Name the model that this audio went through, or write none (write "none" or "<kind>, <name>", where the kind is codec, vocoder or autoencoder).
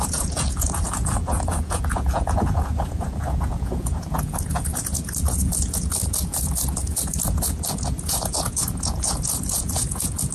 vocoder, Vocos